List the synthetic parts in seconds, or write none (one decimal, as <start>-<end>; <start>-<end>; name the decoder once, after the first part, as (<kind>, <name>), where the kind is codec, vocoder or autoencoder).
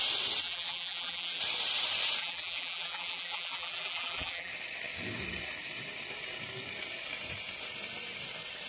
0.4-1.4 (vocoder, BigVGAN v2); 2.2-4.5